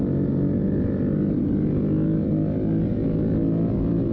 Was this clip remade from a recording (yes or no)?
no